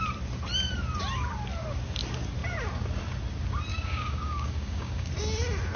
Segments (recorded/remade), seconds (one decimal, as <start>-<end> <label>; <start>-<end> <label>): 0.0-3.7 recorded; 3.7-5.1 remade; 5.1-5.8 recorded